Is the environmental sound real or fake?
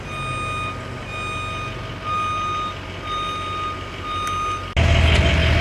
real